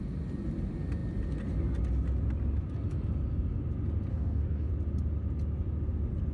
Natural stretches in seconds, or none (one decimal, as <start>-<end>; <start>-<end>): 0.0-4.1; 4.7-6.3